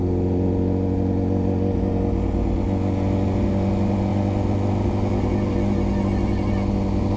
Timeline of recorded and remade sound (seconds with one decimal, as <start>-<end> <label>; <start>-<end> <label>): 0.0-7.2 recorded

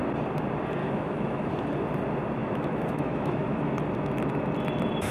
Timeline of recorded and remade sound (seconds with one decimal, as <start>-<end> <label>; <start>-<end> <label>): 0.0-0.8 recorded; 0.8-1.5 remade; 1.5-2.4 recorded; 2.4-3.7 remade; 3.7-5.1 recorded

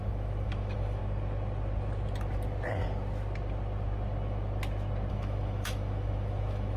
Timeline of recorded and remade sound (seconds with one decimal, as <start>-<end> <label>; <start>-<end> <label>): 0.0-1.0 remade; 1.0-5.1 recorded; 5.1-6.8 remade

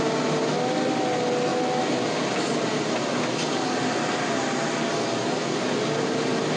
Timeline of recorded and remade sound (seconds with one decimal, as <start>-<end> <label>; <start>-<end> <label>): 0.0-6.6 recorded

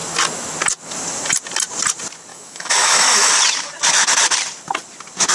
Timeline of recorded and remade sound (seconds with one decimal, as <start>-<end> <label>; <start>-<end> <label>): 0.0-2.3 recorded; 2.3-3.3 remade; 3.3-5.3 recorded

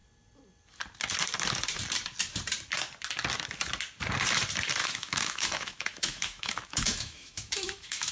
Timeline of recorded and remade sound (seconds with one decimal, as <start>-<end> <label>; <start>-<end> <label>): 0.0-4.8 recorded; 4.8-8.1 remade

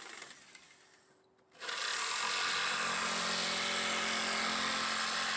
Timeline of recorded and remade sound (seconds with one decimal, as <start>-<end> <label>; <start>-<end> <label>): 0.0-5.4 recorded

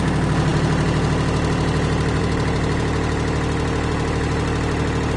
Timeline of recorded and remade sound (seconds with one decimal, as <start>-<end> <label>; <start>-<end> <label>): 0.0-5.2 recorded